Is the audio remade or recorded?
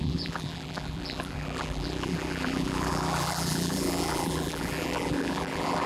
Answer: remade